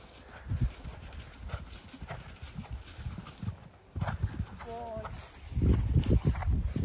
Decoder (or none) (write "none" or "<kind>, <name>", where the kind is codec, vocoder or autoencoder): none